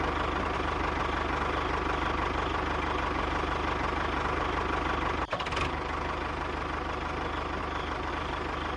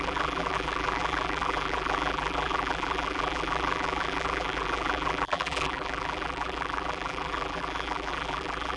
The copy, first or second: second